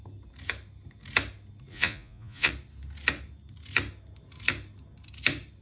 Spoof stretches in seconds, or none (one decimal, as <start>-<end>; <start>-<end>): 1.7-2.5